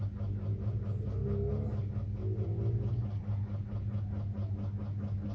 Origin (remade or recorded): recorded